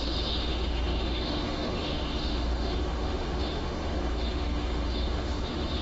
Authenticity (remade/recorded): remade